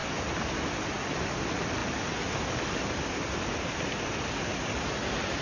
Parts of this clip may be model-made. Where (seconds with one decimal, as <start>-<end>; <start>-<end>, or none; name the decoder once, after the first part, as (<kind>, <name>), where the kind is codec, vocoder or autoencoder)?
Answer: none